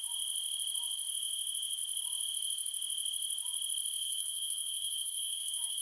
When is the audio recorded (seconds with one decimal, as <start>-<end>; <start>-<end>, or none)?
0.0-4.0